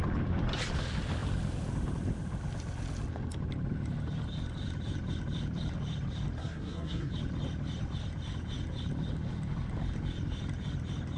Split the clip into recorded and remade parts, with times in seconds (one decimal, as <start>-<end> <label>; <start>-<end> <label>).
0.0-6.4 recorded; 6.4-7.1 remade; 7.1-11.2 recorded